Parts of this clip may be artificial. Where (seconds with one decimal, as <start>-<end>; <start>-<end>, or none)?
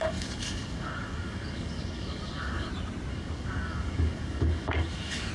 0.0-2.7; 3.1-5.3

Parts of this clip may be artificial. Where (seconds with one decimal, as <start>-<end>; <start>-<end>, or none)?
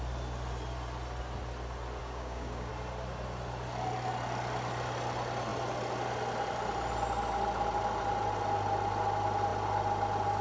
2.0-2.7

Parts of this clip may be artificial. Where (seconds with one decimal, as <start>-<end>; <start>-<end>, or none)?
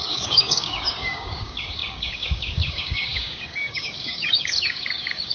0.0-5.3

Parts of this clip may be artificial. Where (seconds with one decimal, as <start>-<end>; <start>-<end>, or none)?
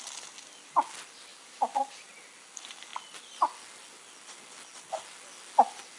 1.3-1.9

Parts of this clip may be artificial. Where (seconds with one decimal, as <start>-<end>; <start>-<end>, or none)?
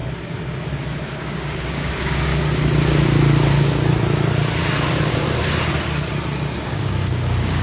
1.1-2.3; 6.6-7.6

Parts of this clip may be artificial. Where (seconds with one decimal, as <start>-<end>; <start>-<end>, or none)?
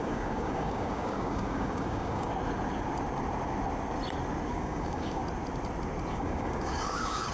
0.0-2.3; 4.5-5.2; 6.1-7.3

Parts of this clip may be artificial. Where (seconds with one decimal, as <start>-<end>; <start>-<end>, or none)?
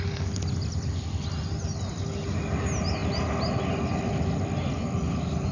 none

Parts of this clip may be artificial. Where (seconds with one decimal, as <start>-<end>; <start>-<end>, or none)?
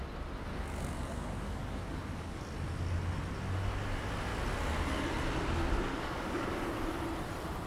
0.5-2.4; 5.9-6.7